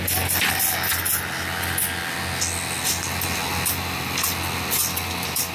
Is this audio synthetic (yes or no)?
no